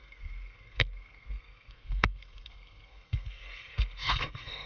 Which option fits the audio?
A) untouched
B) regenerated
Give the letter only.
B